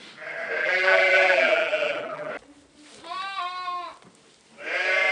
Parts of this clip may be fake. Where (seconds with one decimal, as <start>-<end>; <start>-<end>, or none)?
0.6-2.3

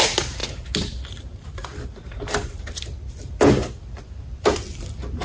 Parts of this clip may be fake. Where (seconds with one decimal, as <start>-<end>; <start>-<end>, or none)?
none

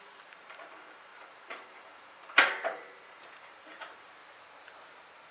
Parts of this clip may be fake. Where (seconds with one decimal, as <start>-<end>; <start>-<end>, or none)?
0.0-4.2

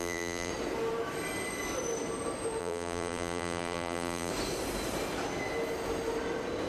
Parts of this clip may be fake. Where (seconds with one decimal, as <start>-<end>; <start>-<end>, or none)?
0.0-0.5; 2.6-4.3